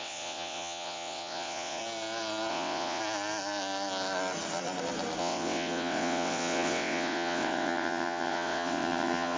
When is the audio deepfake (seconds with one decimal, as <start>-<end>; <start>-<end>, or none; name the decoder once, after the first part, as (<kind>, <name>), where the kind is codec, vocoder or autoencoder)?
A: 0.0-1.8 (vocoder, WaveNeXt); 2.5-3.0; 5.2-9.4

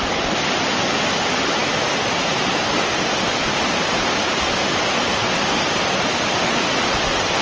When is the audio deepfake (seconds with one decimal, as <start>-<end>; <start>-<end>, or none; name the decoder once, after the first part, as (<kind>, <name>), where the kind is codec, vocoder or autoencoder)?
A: none